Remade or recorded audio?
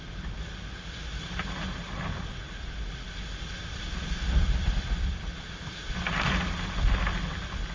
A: recorded